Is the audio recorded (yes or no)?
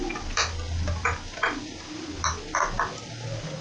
yes